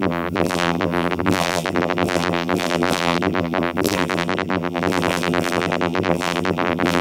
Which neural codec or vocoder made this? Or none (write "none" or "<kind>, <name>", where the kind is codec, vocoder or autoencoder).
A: vocoder, BigVGAN v2